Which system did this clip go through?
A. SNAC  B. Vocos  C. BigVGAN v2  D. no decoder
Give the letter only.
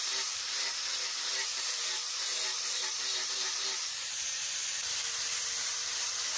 C